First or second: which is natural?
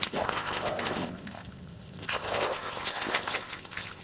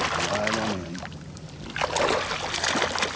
second